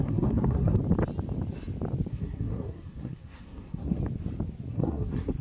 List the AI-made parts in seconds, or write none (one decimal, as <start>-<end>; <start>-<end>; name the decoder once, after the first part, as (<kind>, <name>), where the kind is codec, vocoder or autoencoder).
0.0-0.8 (codec, SNAC); 2.1-4.0; 4.7-5.4